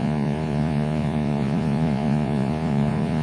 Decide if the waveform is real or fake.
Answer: fake